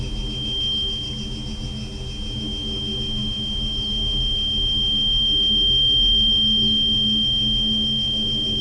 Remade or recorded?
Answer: recorded